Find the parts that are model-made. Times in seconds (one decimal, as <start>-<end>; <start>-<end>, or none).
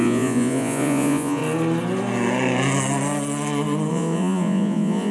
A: 0.0-1.4; 3.9-5.1